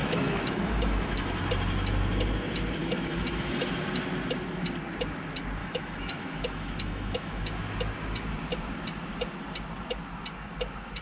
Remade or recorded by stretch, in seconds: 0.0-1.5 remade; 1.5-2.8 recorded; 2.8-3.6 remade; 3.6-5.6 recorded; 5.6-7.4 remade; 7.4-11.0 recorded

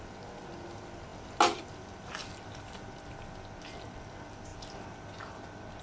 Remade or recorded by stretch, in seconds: 0.0-5.8 recorded

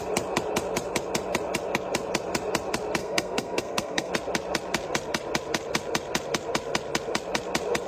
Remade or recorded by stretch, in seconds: 0.0-3.0 recorded; 3.0-4.1 remade; 4.1-7.9 recorded

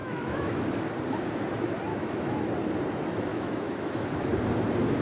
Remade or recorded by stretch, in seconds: 0.0-0.8 remade; 0.8-1.9 recorded; 1.9-2.4 remade; 2.4-3.3 recorded; 3.3-4.3 remade; 4.3-5.0 recorded

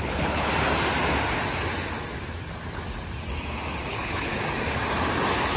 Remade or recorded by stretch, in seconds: 0.0-0.5 remade; 0.5-3.9 recorded; 3.9-4.3 remade; 4.3-5.6 recorded